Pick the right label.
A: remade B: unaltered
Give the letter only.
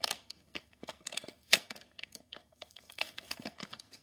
A